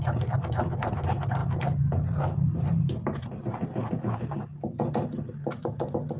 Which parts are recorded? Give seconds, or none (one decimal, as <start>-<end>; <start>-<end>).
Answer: 0.0-6.2